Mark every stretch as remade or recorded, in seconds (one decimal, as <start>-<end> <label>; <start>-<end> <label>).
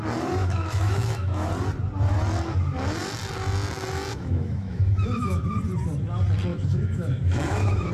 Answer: 0.0-0.4 recorded; 0.4-1.5 remade; 1.5-4.1 recorded; 4.1-5.4 remade; 5.4-6.5 recorded; 6.5-7.9 remade